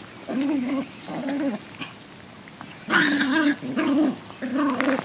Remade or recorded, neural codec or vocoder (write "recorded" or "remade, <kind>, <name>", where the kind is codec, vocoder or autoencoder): recorded